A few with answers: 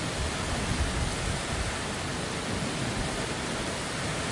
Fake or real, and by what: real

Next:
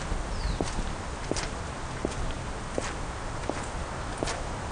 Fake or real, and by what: real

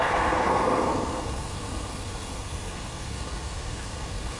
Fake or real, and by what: fake, codec, SNAC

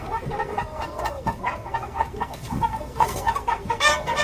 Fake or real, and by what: fake, codec, SNAC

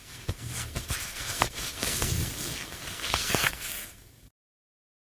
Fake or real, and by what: fake, codec, SNAC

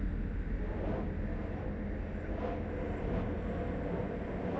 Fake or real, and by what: real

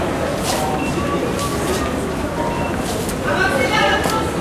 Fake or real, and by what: real